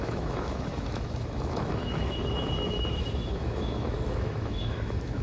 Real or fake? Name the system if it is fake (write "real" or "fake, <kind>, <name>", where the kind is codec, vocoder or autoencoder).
fake, autoencoder, DAC-VAE